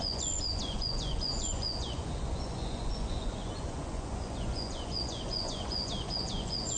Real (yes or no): no